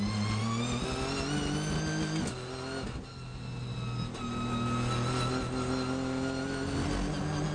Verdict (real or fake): real